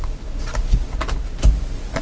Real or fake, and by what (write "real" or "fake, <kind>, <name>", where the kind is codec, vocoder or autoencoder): real